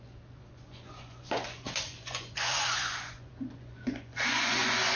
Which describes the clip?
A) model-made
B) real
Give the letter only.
A